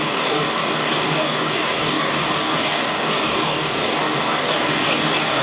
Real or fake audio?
fake